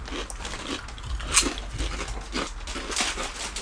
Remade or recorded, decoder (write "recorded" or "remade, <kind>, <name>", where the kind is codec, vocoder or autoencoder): recorded